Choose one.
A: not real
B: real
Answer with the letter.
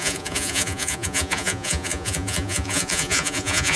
A